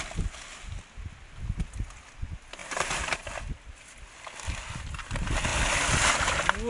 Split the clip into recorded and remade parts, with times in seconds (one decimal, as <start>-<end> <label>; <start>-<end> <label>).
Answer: 0.0-2.6 recorded; 2.6-3.5 remade; 3.5-6.7 recorded